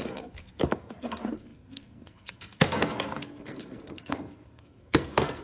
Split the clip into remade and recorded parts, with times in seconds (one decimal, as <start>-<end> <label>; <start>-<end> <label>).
0.0-5.4 remade